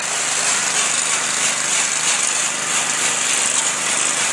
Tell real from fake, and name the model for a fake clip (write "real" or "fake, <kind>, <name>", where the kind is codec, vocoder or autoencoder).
real